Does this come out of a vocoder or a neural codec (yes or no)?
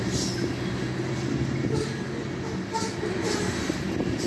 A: no